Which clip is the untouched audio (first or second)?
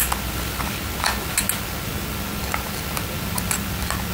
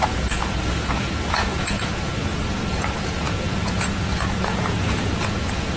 first